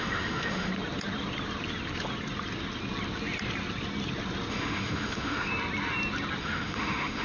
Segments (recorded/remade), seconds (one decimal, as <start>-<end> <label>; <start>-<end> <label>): 0.0-0.7 remade; 0.7-4.5 recorded; 4.5-5.5 remade; 5.5-6.4 recorded; 6.4-7.2 remade